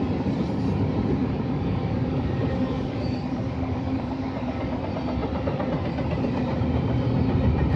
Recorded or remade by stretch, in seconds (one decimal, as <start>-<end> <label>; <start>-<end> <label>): 0.0-1.2 recorded; 1.2-4.8 remade; 4.8-7.8 recorded